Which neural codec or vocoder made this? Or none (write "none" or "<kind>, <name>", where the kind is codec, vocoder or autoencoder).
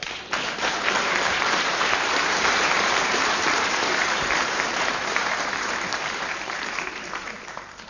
vocoder, BigVGAN v2